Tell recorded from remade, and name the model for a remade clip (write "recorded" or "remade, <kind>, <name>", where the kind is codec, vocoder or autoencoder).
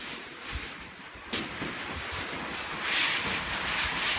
recorded